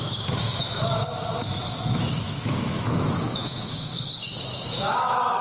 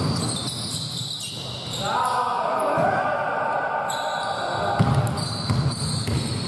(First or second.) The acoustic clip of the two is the second